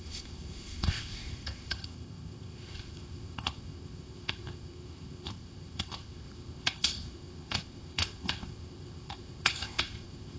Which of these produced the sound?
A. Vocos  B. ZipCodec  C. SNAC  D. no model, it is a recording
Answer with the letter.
B